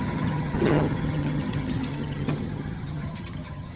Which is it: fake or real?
fake